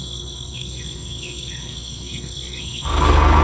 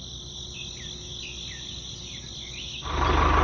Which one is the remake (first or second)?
first